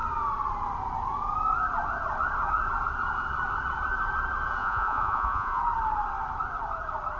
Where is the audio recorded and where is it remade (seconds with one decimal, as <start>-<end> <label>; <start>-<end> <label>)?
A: 0.0-4.6 recorded; 4.6-5.6 remade; 5.6-7.2 recorded